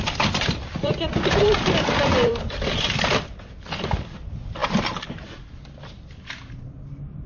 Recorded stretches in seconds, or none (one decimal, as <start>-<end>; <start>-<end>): 4.6-5.1